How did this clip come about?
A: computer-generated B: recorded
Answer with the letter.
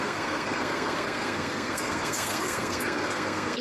A